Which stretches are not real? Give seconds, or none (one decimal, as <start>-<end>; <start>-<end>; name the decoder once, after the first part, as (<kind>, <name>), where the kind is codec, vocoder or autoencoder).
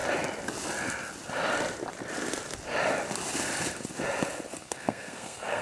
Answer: 4.6-5.6 (codec, SNAC)